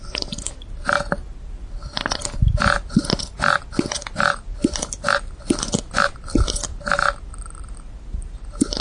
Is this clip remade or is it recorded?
recorded